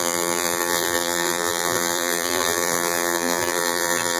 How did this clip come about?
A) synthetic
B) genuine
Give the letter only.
A